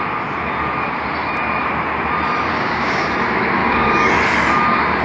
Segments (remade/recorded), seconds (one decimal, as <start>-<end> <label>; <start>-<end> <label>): 0.0-2.5 recorded; 2.5-3.1 remade; 3.1-3.6 recorded; 3.6-4.1 remade; 4.1-5.0 recorded